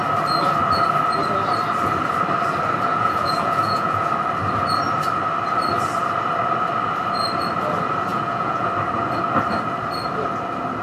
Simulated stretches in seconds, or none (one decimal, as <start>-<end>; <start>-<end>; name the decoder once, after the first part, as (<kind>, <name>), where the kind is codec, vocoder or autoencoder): 2.9-4.1 (vocoder, Vocos); 8.1-8.7